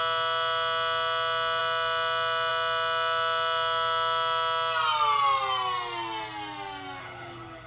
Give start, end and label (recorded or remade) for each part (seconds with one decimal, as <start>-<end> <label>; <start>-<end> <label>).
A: 0.0-7.0 recorded; 7.0-7.7 remade